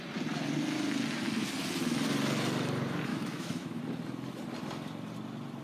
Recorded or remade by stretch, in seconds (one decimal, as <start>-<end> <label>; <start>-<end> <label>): 0.0-3.1 recorded; 3.1-3.8 remade; 3.8-5.6 recorded